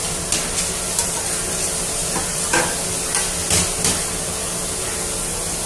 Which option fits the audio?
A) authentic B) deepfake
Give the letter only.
A